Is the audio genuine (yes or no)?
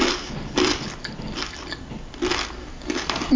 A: yes